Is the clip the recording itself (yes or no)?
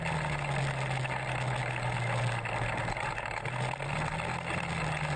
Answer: yes